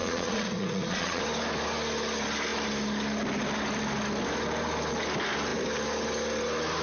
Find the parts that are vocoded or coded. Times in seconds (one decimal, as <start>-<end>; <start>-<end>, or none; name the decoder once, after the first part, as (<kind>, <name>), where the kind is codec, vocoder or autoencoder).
0.0-1.2 (vocoder, Vocos)